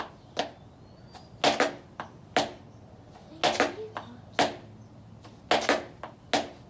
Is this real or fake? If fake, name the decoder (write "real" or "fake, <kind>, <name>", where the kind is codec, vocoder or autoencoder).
real